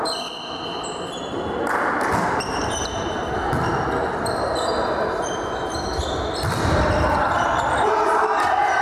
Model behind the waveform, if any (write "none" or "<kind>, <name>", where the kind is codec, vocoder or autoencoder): none